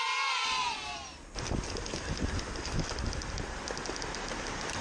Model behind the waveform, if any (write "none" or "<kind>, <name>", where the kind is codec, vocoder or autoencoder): none